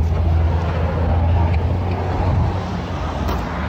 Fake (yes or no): no